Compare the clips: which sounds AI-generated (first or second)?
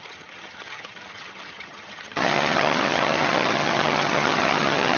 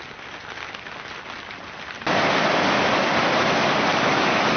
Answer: first